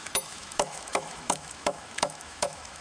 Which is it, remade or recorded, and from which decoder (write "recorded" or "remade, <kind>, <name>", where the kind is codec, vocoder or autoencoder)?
remade, autoencoder, DAC-VAE